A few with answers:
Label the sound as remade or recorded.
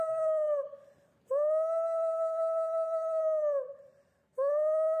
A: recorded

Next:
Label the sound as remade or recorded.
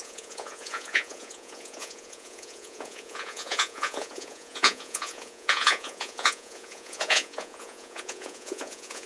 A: remade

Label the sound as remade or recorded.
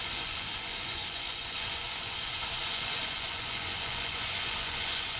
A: remade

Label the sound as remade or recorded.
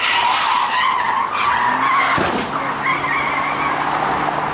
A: recorded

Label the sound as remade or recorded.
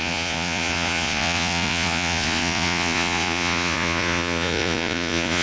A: remade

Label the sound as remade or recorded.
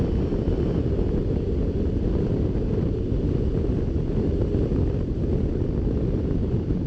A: recorded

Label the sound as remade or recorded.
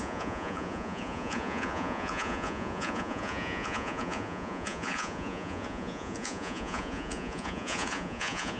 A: remade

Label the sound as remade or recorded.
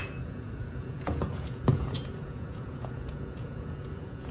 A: remade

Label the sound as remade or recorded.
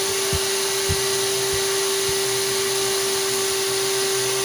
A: recorded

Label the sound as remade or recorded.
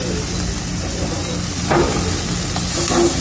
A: recorded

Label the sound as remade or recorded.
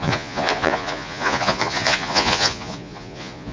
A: remade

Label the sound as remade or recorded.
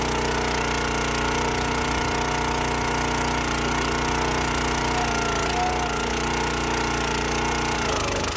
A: recorded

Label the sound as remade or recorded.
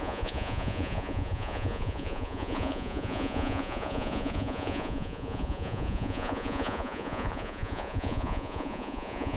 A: remade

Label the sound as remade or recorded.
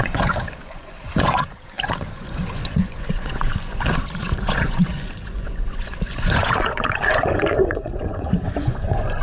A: remade